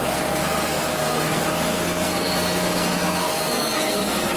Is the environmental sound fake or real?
fake